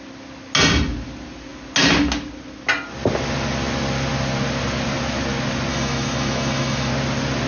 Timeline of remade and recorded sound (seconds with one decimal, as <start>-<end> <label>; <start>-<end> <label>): 0.0-5.7 recorded; 5.7-6.9 remade; 6.9-7.5 recorded